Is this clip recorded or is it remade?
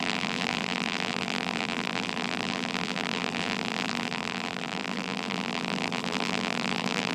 remade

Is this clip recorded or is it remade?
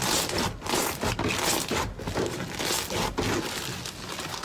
recorded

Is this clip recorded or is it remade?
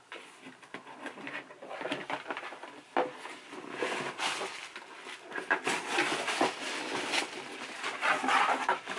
recorded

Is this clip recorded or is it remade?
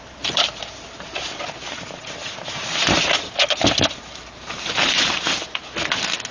remade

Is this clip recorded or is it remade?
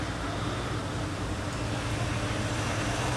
recorded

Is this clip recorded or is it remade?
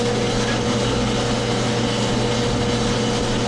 recorded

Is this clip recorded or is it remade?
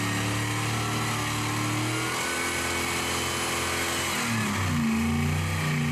recorded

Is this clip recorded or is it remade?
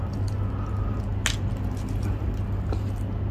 recorded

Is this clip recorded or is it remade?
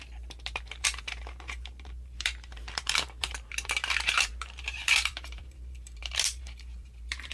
remade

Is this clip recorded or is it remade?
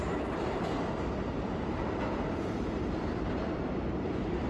remade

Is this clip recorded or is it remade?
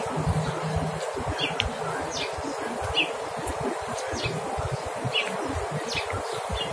recorded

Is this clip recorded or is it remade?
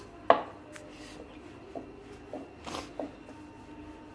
recorded